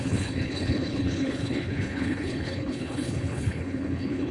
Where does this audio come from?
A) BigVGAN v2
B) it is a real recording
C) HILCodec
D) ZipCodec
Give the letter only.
C